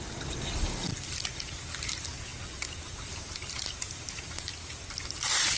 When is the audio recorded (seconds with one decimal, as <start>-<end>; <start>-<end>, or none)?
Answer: 0.0-5.6